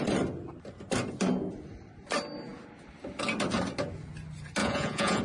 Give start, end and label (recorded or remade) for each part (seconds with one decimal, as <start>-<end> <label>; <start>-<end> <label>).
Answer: 0.0-4.6 recorded; 4.6-5.2 remade